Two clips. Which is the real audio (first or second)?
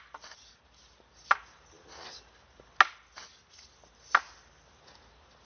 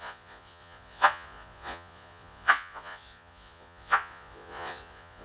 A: first